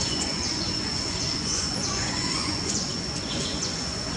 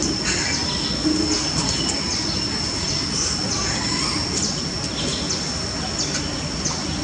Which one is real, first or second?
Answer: second